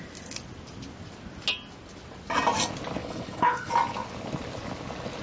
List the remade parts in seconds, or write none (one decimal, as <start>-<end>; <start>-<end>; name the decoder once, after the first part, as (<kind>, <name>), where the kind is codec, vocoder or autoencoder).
3.0-3.7 (codec, HILCodec)